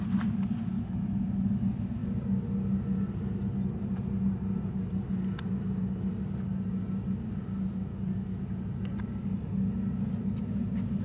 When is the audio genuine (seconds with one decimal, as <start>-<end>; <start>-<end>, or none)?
0.0-11.0